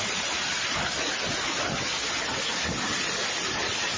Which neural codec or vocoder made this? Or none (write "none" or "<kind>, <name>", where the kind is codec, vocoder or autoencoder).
none